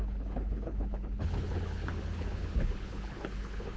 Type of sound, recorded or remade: remade